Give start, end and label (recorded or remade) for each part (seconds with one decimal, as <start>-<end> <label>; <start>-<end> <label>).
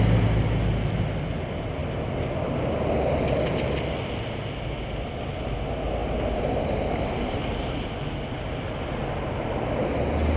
0.0-10.4 recorded